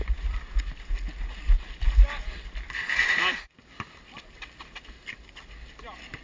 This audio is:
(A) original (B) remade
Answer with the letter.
A